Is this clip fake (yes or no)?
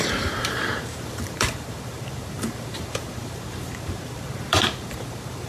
yes